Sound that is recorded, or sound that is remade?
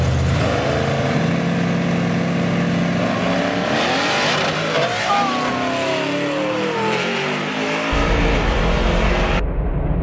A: recorded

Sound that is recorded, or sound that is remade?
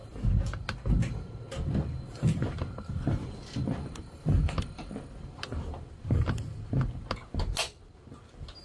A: recorded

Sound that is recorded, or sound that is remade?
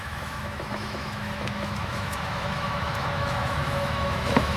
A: remade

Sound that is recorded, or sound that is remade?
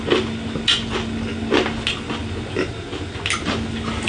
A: recorded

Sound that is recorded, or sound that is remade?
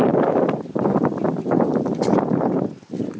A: recorded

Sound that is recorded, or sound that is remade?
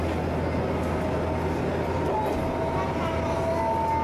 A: recorded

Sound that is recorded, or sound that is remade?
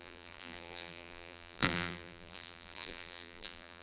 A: remade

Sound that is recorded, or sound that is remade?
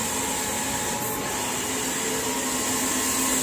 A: recorded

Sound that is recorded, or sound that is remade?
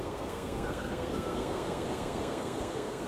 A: remade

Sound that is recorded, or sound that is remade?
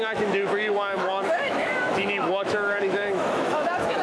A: remade